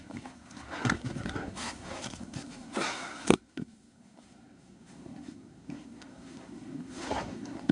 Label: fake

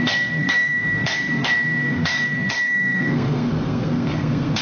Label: fake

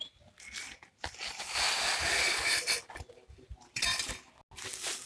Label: real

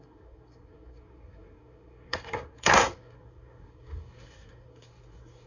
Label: fake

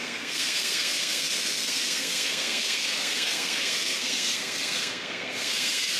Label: fake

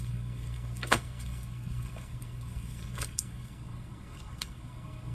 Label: fake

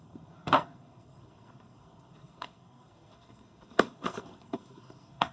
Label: fake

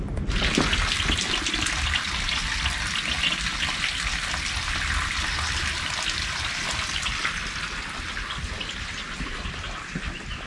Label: real